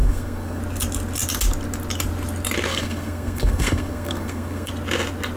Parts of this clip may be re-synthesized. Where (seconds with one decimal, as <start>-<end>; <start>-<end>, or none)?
0.0-0.6; 2.7-4.7